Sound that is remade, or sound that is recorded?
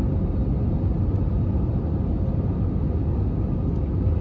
recorded